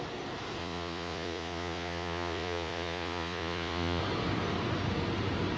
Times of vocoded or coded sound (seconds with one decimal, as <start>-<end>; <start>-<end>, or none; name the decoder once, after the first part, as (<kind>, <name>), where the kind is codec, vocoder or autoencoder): 0.6-4.0 (vocoder, Vocos)